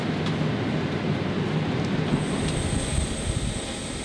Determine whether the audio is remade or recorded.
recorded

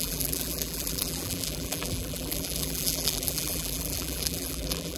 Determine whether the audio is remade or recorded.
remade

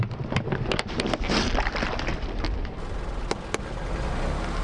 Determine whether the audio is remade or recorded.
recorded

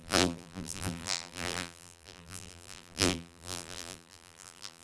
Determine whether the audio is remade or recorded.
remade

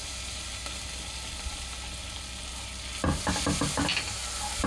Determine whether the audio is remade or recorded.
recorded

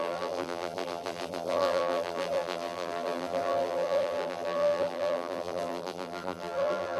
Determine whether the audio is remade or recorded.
remade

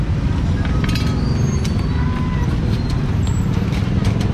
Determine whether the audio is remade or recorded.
recorded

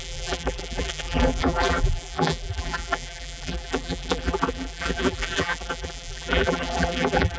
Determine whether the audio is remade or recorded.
remade